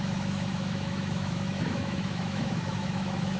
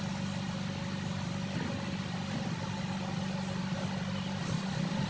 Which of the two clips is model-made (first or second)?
first